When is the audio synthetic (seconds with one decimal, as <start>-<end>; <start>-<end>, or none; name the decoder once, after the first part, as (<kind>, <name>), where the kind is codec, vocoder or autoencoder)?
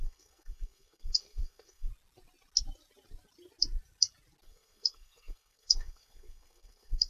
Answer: 0.0-1.9 (codec, SNAC); 4.4-7.1